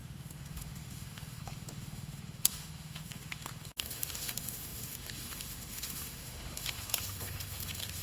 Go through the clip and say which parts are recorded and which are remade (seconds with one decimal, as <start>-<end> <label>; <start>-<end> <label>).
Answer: 0.0-8.0 remade